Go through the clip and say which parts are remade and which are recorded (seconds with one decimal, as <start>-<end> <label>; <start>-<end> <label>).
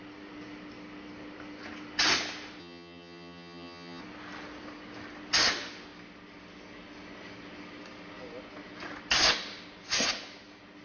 0.0-2.6 recorded; 2.6-4.0 remade; 4.0-10.8 recorded